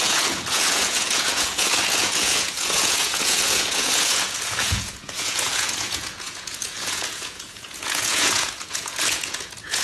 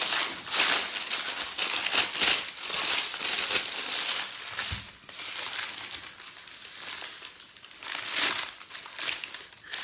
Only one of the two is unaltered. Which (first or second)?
second